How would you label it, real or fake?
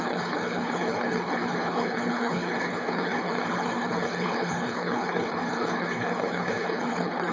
fake